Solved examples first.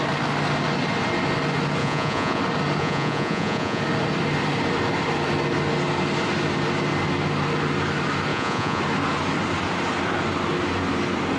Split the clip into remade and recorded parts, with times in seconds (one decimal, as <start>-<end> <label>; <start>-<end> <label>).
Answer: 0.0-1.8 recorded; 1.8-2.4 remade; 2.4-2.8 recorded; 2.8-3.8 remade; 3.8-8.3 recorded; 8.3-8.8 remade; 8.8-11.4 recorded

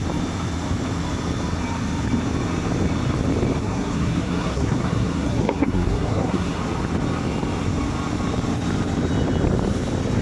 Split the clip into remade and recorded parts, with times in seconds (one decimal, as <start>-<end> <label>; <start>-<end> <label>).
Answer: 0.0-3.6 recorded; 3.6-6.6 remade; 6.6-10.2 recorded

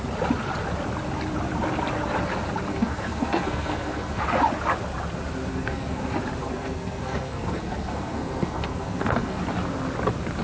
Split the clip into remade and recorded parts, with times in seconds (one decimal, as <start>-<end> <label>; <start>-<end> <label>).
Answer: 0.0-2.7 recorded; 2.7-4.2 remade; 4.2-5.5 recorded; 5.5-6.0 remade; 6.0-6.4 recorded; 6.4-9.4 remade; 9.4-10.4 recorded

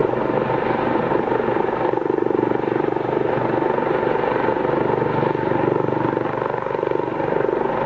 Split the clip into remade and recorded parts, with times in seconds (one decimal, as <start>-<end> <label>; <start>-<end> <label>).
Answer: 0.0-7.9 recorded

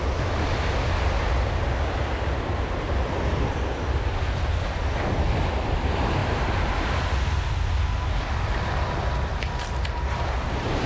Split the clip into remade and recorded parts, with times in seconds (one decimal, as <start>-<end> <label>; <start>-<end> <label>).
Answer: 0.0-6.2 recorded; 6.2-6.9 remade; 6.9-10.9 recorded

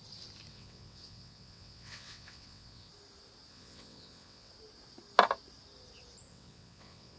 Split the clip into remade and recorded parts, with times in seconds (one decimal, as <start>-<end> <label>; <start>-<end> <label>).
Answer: 0.0-0.5 recorded; 0.5-2.9 remade; 2.9-3.5 recorded; 3.5-4.5 remade; 4.5-6.3 recorded; 6.3-7.2 remade

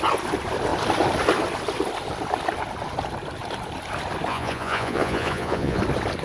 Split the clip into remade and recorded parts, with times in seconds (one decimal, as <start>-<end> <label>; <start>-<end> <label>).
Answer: 0.0-4.3 recorded; 4.3-5.8 remade; 5.8-6.2 recorded

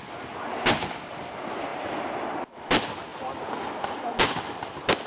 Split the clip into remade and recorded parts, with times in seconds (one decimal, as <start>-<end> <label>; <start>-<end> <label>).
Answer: 0.0-5.1 recorded